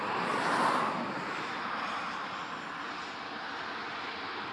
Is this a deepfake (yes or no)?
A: no